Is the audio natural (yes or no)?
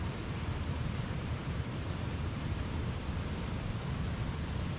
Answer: no